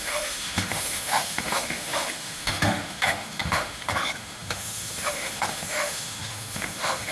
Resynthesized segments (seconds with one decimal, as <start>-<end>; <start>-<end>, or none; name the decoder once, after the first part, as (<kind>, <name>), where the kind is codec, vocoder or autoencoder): 0.0-7.1 (autoencoder, DAC-VAE)